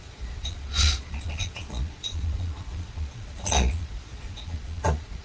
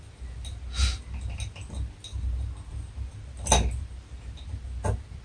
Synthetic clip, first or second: first